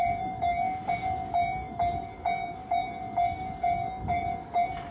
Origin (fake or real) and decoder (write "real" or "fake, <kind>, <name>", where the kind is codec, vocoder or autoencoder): fake, codec, DAC